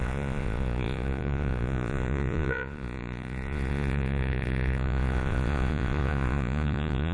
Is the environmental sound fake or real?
fake